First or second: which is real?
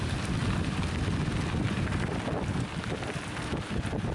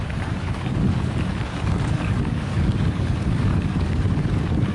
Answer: first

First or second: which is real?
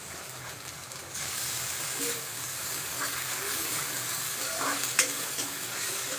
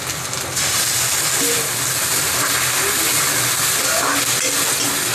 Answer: second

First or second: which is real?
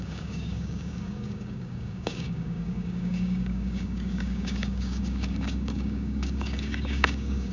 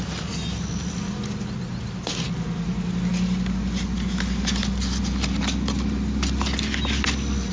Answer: second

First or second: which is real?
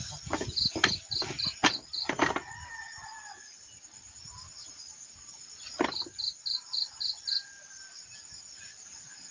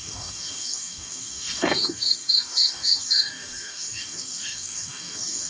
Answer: first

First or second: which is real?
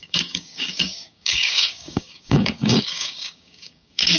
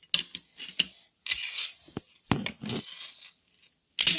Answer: second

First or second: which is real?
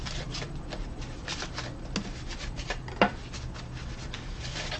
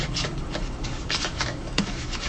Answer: first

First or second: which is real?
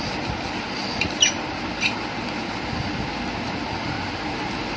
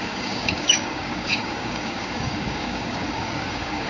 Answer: first